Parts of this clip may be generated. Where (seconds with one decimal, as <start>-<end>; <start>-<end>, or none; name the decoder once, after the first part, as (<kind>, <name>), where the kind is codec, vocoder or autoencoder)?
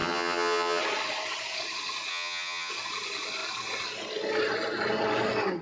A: 0.0-0.8 (vocoder, HiFi-GAN); 2.1-2.7